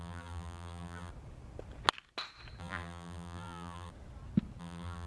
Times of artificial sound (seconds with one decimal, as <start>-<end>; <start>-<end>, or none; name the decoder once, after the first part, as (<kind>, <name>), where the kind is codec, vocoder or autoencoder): 0.0-1.1 (vocoder, BigVGAN v2); 2.6-3.9; 4.6-5.1